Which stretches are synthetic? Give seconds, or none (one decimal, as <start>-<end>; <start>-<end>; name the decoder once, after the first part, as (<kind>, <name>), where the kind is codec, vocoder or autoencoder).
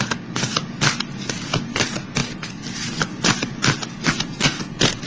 none